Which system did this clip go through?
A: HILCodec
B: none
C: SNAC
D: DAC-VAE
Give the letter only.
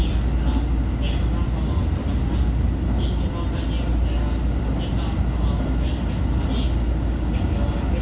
B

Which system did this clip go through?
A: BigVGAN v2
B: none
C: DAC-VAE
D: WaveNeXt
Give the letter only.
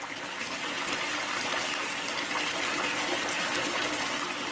B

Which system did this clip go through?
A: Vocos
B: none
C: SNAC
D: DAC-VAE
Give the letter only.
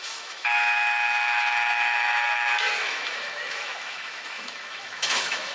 D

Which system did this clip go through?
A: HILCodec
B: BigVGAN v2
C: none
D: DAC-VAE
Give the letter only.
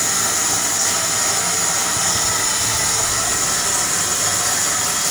C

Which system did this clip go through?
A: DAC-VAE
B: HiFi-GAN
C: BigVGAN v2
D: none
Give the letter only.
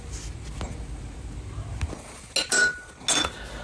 D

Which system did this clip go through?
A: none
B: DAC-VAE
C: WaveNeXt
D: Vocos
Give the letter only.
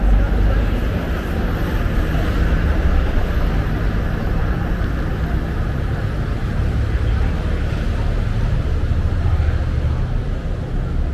A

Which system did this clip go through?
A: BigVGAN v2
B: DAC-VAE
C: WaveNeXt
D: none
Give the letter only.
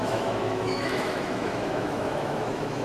B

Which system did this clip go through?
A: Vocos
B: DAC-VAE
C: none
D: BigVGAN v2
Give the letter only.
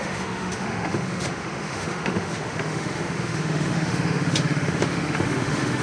B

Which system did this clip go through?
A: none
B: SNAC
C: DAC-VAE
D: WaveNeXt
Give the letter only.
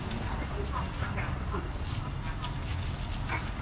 A